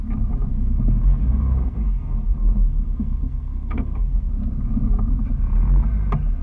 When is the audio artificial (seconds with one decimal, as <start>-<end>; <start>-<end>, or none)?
0.5-4.3

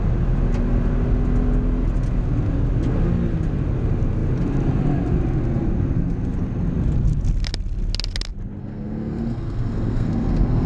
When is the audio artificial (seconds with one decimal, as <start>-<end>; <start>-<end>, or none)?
8.6-10.7